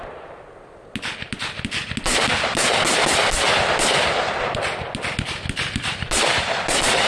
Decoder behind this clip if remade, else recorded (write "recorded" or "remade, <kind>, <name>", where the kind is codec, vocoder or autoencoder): recorded